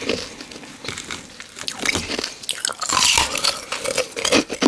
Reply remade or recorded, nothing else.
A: recorded